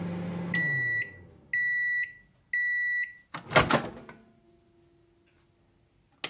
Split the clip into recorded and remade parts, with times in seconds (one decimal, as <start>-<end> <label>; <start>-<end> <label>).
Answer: 0.0-6.3 recorded